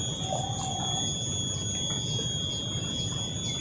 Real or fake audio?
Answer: real